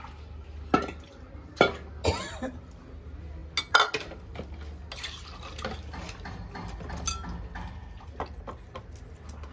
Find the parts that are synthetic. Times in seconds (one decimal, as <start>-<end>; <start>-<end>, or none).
none